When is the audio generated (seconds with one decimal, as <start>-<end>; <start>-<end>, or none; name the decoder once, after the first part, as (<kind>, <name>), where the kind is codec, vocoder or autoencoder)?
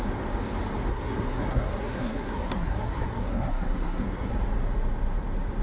0.9-4.3 (codec, SNAC)